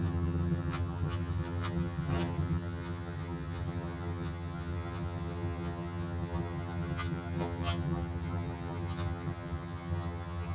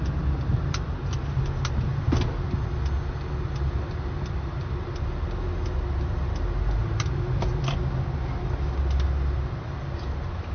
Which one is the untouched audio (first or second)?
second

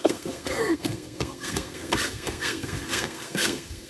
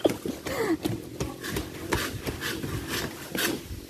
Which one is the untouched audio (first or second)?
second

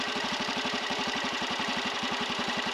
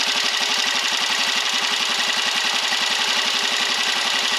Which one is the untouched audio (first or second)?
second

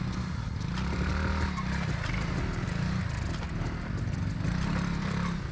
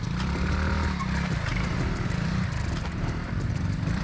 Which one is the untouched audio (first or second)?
first